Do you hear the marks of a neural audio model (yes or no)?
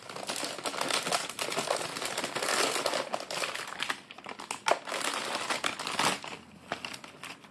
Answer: no